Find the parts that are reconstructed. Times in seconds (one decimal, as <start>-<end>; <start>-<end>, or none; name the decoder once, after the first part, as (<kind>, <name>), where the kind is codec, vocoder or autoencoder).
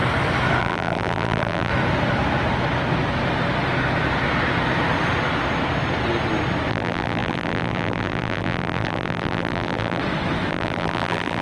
0.6-1.7 (vocoder, BigVGAN v2); 6.7-10.0; 10.5-11.4